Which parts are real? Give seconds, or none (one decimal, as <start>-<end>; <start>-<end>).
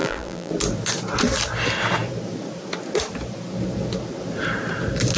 0.5-5.2